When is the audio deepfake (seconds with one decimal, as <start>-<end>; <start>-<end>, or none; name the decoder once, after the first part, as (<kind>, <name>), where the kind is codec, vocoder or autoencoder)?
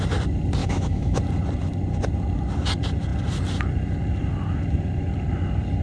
0.6-1.2 (autoencoder, DAC-VAE)